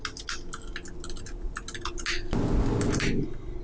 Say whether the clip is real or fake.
real